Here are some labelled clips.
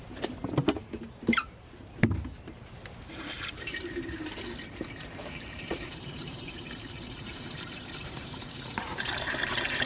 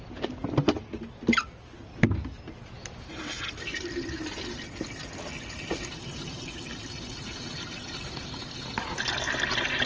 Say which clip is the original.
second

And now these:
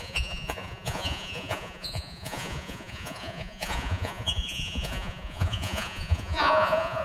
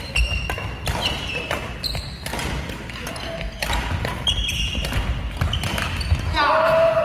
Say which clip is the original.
second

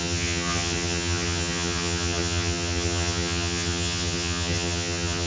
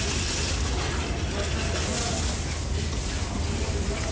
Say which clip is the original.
second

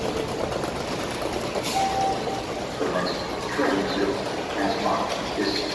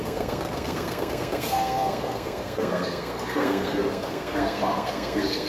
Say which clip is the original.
first